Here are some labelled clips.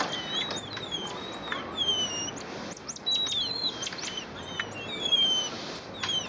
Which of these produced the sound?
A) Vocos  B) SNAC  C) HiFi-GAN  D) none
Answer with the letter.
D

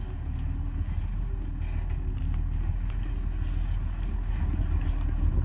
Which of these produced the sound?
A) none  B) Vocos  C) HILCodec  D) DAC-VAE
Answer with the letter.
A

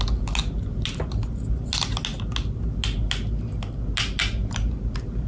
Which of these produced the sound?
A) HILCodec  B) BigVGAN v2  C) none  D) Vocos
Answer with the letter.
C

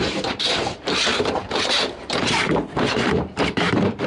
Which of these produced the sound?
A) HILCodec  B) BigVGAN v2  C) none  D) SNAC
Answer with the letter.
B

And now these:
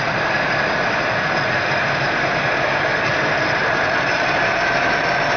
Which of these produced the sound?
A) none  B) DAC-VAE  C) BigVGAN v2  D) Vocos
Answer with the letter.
C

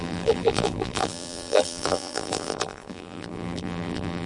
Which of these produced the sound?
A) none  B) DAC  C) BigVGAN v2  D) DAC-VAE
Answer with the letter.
C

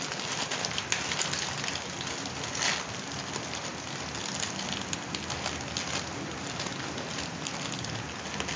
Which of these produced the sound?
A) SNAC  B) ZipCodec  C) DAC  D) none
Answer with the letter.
D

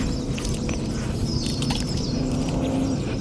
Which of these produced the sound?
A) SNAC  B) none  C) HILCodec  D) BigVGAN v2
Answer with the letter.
B